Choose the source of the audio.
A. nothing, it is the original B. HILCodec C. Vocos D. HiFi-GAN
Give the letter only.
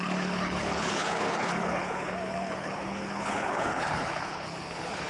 B